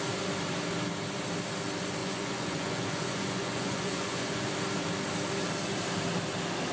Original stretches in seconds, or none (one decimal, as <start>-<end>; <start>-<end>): 0.0-2.0; 4.5-6.7